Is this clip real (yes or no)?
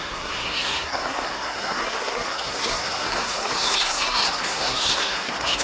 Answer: no